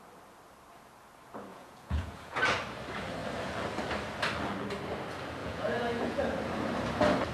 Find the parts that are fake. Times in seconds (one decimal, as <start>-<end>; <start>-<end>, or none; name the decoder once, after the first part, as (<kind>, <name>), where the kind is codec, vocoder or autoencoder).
1.5-2.4 (vocoder, Vocos); 5.4-6.2